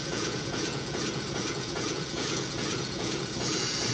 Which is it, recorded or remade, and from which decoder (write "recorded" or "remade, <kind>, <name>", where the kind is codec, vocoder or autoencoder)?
remade, vocoder, Vocos